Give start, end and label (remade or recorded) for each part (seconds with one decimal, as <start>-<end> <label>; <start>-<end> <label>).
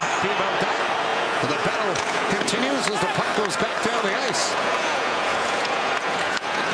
0.0-1.1 recorded; 1.1-2.6 remade; 2.6-4.4 recorded; 4.4-6.7 remade